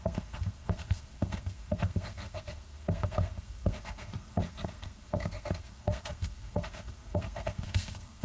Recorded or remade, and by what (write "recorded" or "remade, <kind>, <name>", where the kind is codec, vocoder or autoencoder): remade, codec, SNAC